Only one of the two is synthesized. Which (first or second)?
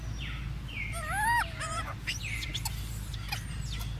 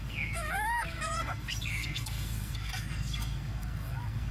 second